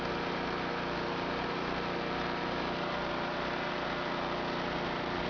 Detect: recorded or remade recorded